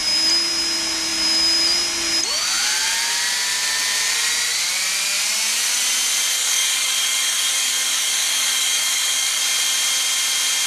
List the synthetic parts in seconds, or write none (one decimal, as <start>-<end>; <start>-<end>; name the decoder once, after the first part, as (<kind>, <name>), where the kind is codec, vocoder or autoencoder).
6.3-9.4 (codec, DAC)